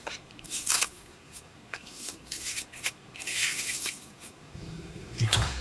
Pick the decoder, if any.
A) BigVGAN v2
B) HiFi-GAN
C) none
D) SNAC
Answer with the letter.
D